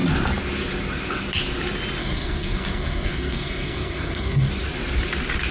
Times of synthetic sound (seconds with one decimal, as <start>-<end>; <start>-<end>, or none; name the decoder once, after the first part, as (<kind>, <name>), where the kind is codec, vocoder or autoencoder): 2.0-4.5 (codec, SNAC)